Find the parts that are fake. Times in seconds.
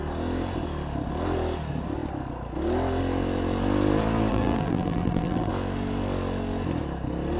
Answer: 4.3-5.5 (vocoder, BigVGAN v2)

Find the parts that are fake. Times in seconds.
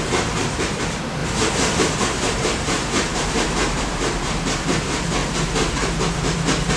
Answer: 0.0-1.2 (vocoder, BigVGAN v2); 1.8-6.8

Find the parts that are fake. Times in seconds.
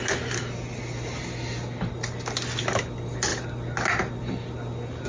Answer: none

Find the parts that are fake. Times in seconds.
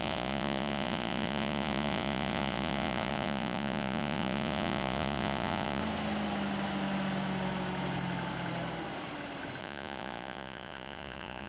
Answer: 0.0-5.8 (vocoder, Vocos); 9.6-11.5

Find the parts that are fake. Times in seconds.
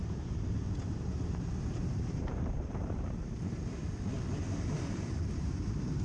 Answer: 0.0-3.8 (vocoder, BigVGAN v2); 5.3-6.0